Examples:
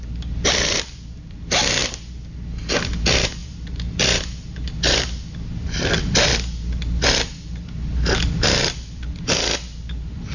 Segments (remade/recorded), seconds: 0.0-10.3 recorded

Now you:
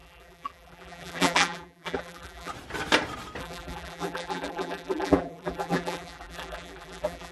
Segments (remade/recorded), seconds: 0.0-2.5 remade; 2.5-3.4 recorded; 3.4-7.3 remade

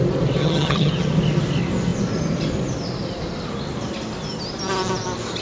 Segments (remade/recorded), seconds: 0.0-0.4 recorded; 0.4-1.1 remade; 1.1-5.4 recorded

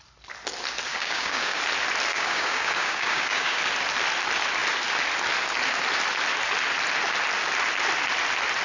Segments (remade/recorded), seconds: 0.0-0.9 recorded; 0.9-1.6 remade; 1.6-2.1 recorded; 2.1-3.6 remade; 3.6-8.6 recorded

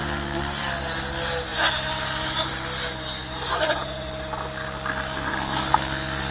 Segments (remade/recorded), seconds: 0.0-6.3 recorded

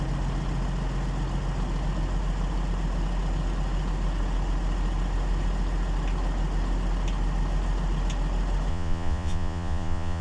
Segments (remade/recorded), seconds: 0.0-8.7 recorded; 8.7-10.2 remade